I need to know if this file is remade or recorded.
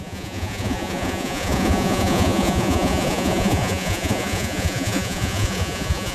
remade